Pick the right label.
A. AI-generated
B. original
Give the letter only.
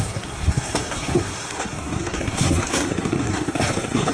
A